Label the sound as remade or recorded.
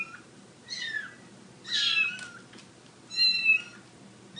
recorded